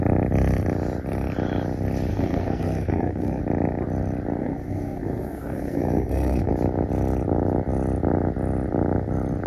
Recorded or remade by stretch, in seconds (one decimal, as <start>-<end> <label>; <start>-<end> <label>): 0.0-2.1 recorded; 2.1-3.4 remade; 3.4-4.4 recorded; 4.4-6.5 remade; 6.5-9.5 recorded